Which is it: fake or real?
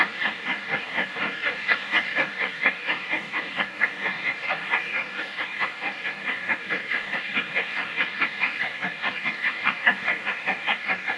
fake